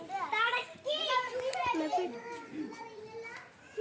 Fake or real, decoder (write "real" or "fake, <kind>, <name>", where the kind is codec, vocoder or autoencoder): real